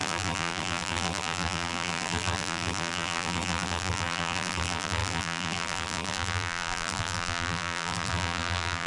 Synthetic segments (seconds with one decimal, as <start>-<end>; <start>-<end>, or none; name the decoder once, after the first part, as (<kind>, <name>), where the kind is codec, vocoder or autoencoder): 0.0-8.9 (vocoder, BigVGAN v2)